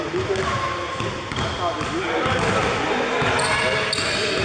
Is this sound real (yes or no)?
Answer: yes